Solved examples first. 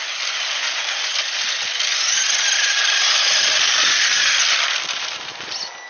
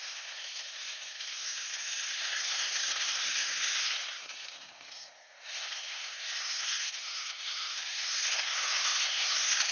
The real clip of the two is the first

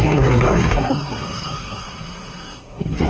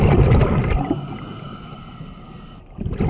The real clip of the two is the second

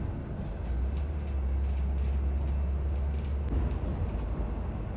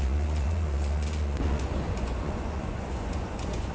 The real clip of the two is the first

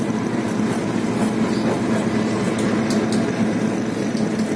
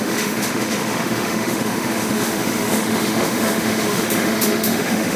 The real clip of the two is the first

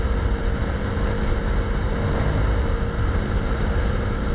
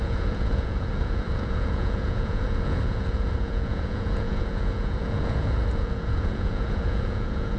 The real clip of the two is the first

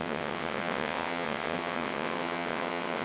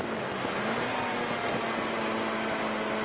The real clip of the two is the second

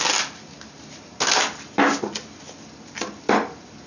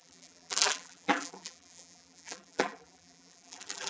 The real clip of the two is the first